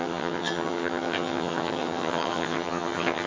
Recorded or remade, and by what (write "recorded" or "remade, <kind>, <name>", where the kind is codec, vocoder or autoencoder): remade, vocoder, HiFi-GAN